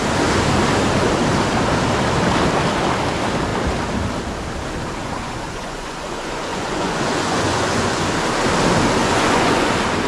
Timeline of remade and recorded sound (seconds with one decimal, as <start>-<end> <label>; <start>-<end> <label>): 0.0-5.0 recorded; 5.0-8.1 remade; 8.1-9.0 recorded; 9.0-9.7 remade; 9.7-10.1 recorded